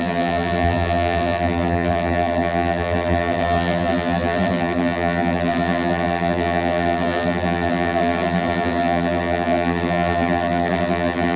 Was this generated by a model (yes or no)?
yes